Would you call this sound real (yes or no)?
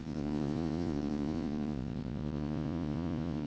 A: no